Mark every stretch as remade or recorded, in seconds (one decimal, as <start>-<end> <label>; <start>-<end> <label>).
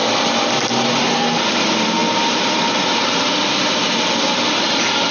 0.0-5.1 recorded